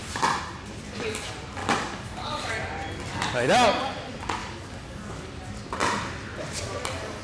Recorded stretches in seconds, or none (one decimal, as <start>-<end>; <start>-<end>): 0.0-1.6; 2.5-4.4; 5.3-7.2